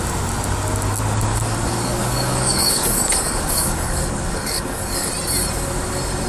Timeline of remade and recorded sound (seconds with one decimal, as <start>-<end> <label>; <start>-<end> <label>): 0.0-1.3 recorded; 1.3-5.1 remade; 5.1-6.3 recorded